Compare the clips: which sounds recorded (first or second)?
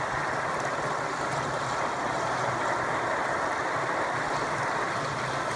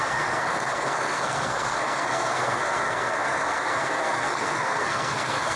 first